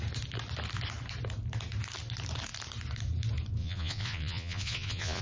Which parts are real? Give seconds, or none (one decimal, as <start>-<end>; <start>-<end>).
0.0-3.6